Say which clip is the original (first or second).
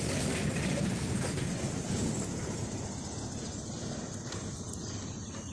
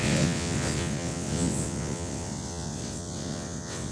first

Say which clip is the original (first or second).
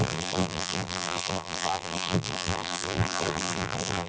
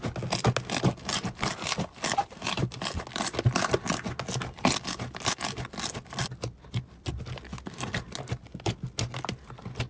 second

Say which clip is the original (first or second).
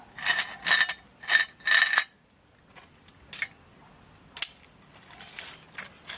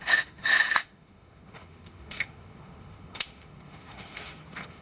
first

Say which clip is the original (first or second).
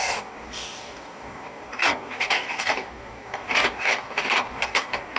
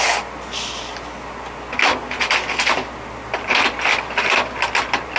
second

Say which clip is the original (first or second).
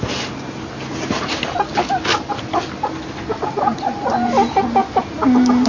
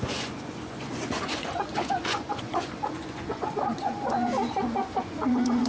first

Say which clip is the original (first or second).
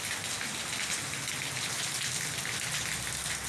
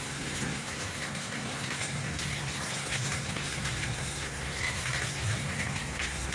first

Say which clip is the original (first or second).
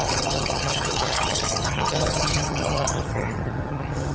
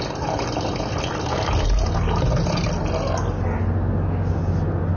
second